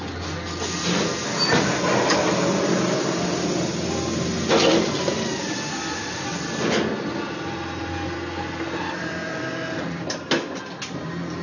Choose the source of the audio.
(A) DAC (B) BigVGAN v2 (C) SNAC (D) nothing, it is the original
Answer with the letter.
D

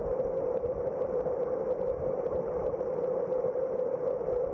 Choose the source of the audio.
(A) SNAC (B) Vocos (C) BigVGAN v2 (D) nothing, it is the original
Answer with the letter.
D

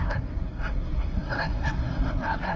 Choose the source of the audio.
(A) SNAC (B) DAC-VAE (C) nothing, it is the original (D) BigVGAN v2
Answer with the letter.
A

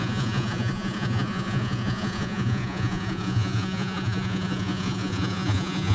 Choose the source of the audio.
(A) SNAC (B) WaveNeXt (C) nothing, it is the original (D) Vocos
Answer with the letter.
D